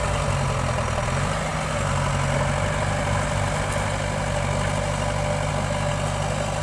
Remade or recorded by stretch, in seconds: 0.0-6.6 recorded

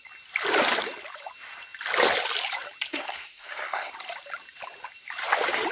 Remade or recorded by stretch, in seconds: 0.0-2.9 recorded; 2.9-3.9 remade; 3.9-5.7 recorded

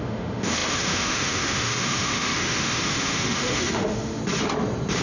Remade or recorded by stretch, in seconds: 0.0-4.2 remade; 4.2-5.0 recorded

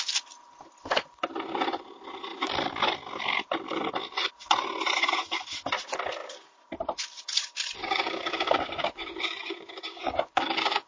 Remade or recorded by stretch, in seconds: 0.0-7.8 recorded; 7.8-10.9 remade